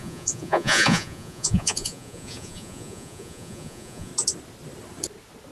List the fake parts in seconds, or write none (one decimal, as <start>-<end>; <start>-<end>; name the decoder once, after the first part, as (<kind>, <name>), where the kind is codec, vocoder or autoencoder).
0.0-4.1 (vocoder, Vocos)